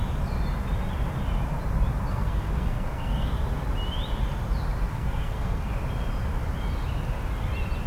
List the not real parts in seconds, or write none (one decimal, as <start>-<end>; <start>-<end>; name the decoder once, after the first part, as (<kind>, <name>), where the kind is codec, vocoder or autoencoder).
2.1-3.3 (codec, SNAC); 4.9-5.7